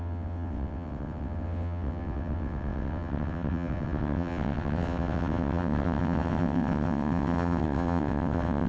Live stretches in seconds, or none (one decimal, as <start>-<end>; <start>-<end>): none

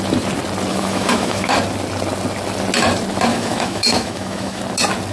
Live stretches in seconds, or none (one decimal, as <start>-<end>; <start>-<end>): 0.0-0.7; 1.5-3.3; 4.6-5.1

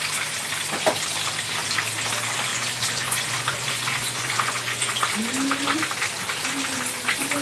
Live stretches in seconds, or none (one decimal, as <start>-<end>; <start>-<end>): 0.0-2.5; 5.1-7.4

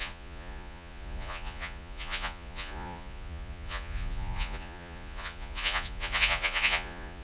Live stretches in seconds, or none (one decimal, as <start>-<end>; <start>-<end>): none

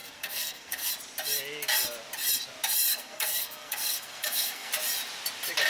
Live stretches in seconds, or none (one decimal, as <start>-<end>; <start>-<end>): 0.9-2.9; 4.7-5.7

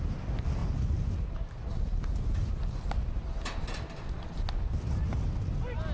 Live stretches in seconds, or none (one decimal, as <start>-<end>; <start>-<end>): 0.0-5.9